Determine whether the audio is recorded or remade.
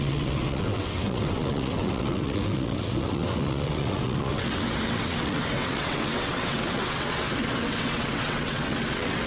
remade